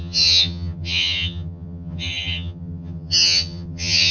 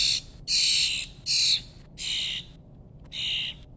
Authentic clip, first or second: second